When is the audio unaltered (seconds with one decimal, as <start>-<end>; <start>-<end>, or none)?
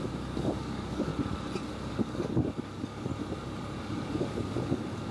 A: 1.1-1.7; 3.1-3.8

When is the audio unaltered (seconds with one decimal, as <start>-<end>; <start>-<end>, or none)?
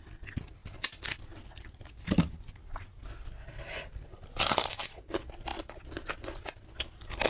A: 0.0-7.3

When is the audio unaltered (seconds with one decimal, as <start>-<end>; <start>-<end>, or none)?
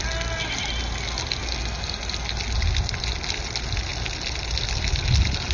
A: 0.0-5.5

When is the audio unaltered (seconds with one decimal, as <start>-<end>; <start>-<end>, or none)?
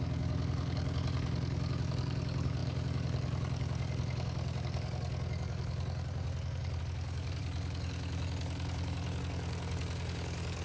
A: none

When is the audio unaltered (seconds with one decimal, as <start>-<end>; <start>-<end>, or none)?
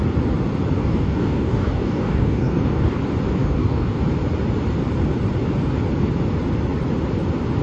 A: 0.0-0.8; 3.0-3.4; 4.0-7.6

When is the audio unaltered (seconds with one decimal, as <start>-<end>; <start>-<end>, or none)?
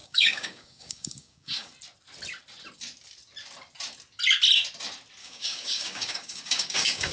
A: 1.7-5.2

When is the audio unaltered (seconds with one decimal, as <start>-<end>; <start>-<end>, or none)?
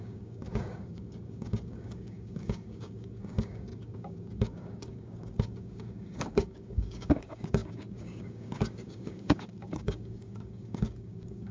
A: none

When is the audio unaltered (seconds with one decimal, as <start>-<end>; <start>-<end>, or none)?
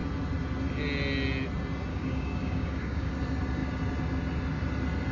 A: 0.0-1.9; 3.1-5.1